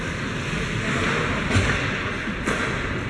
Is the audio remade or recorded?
recorded